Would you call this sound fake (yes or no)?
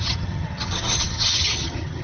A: yes